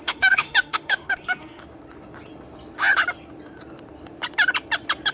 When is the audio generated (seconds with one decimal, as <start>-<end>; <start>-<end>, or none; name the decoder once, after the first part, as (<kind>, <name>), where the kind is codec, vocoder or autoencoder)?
0.0-1.6 (autoencoder, DAC-VAE)